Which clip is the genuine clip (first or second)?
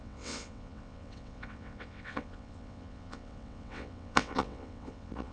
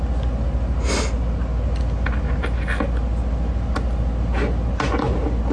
second